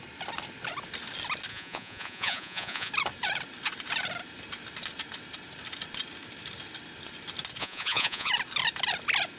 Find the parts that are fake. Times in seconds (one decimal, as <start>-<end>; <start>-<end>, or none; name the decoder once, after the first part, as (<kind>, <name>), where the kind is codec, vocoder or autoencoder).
1.5-2.9 (vocoder, Vocos); 7.6-8.3